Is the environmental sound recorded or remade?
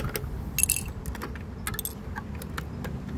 recorded